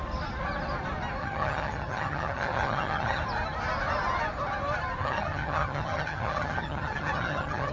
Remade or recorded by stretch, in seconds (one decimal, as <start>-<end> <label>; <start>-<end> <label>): 0.0-1.2 recorded; 1.2-3.2 remade; 3.2-5.0 recorded; 5.0-7.7 remade